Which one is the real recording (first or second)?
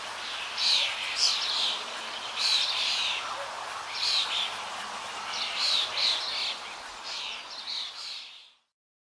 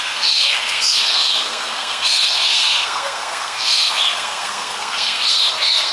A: first